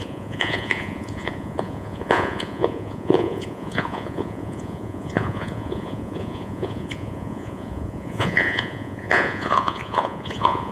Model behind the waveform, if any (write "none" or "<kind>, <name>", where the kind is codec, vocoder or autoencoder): vocoder, Vocos